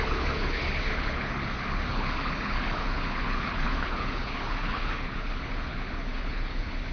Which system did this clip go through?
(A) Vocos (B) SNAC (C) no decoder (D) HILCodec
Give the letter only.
D